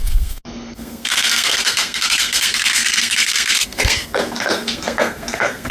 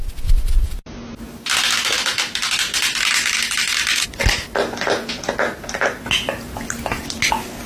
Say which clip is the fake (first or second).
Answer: first